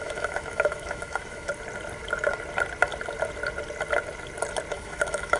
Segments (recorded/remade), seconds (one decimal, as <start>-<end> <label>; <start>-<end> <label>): 0.0-1.5 remade; 1.5-4.7 recorded; 4.7-5.4 remade

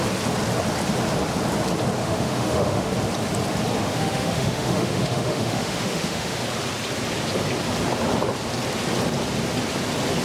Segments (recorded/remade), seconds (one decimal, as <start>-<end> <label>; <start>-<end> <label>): 0.0-2.0 recorded; 2.0-2.9 remade; 2.9-3.8 recorded; 3.8-6.4 remade; 6.4-10.2 recorded

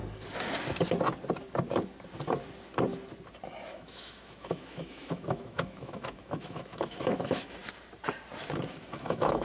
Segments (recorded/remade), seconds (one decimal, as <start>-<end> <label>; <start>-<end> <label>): 0.0-3.7 recorded; 3.7-7.6 remade; 7.6-8.7 recorded; 8.7-9.4 remade

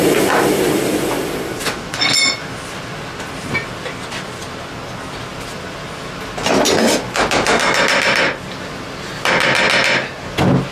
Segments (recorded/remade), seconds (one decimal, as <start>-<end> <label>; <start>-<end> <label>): 0.0-10.7 recorded

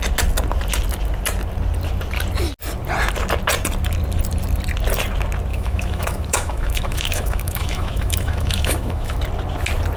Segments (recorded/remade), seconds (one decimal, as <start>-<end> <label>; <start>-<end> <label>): 0.0-5.5 recorded; 5.5-9.2 remade; 9.2-10.0 recorded

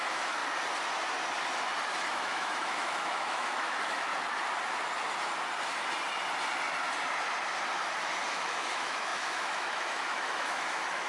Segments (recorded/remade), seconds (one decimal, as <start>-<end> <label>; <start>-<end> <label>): 0.0-0.4 remade; 0.4-2.1 recorded; 2.1-4.1 remade; 4.1-8.3 recorded; 8.3-11.1 remade